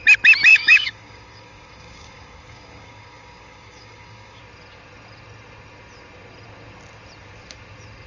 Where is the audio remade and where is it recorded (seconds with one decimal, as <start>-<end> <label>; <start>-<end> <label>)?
0.0-0.5 recorded; 0.5-4.4 remade; 4.4-8.1 recorded